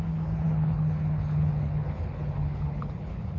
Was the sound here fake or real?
fake